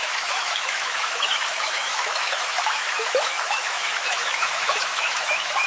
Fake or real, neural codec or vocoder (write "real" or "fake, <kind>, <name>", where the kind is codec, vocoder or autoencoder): fake, autoencoder, DAC-VAE